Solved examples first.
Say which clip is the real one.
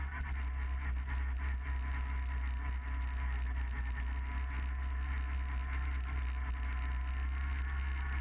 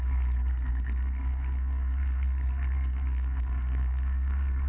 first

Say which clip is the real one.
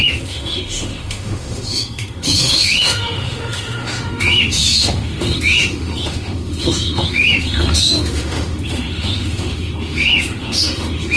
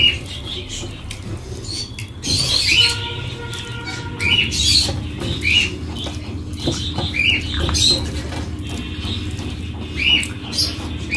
second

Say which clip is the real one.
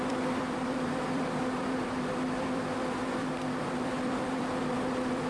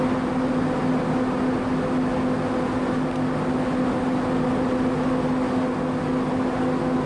second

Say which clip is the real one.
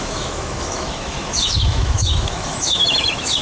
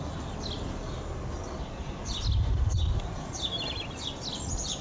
second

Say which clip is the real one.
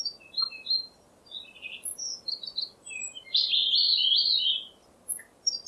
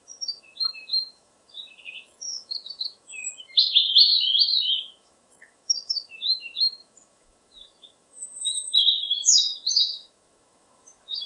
first